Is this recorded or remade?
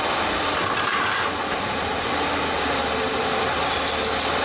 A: recorded